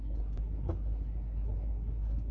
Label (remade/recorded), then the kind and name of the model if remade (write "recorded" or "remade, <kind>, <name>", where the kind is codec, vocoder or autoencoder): remade, codec, SNAC